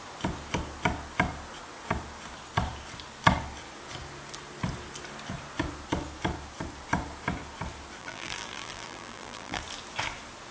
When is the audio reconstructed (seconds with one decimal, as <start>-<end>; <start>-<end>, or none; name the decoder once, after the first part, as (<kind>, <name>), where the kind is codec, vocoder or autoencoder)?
8.0-9.6 (vocoder, BigVGAN v2)

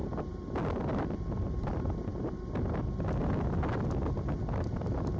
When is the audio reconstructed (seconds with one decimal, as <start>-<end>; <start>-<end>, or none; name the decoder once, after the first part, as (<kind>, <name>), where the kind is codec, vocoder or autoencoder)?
none